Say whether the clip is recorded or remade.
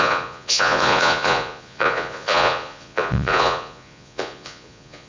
remade